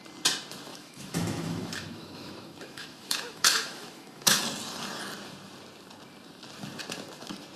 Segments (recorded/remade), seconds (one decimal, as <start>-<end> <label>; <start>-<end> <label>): 0.0-0.7 recorded; 0.7-4.4 remade; 4.4-7.6 recorded